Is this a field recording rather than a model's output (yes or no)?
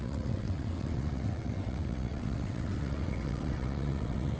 no